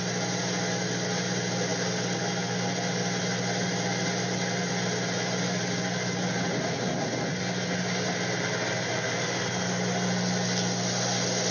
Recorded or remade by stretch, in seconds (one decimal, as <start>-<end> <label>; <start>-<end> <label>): 0.0-11.5 recorded